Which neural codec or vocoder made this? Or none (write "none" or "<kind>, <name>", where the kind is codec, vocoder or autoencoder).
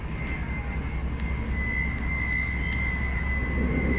none